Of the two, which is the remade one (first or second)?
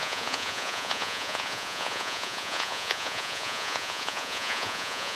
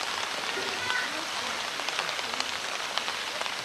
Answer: first